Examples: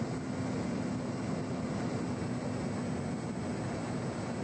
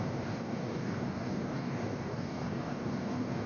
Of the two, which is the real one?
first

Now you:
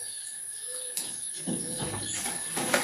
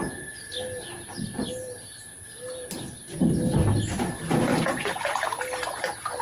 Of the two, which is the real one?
second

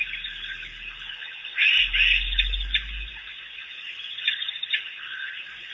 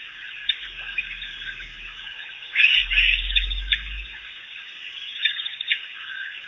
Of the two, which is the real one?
first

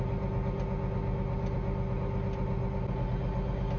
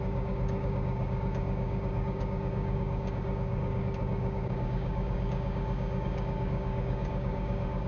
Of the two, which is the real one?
first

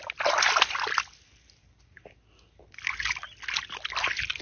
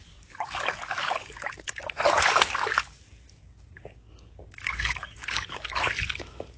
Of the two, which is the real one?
first